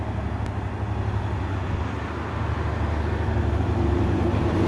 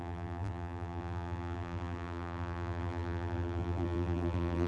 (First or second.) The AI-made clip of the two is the second